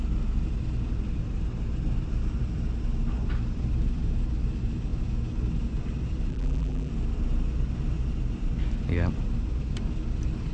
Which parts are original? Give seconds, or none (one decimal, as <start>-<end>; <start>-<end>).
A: 0.0-6.3; 6.9-10.5